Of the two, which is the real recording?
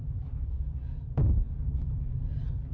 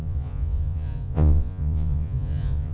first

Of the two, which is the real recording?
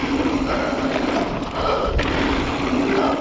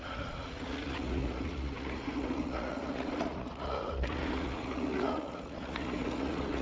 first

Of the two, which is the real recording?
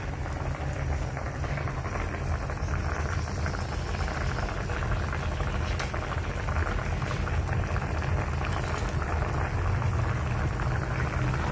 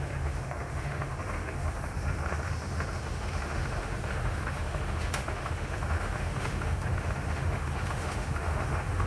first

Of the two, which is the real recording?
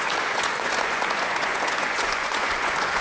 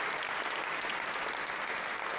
second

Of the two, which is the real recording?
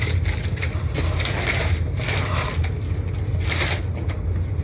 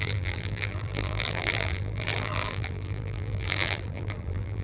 first